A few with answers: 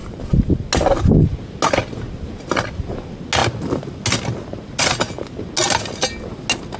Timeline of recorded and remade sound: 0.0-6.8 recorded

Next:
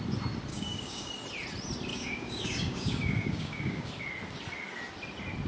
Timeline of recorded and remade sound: 0.0-0.5 recorded; 0.5-1.1 remade; 1.1-1.9 recorded; 1.9-3.9 remade; 3.9-5.5 recorded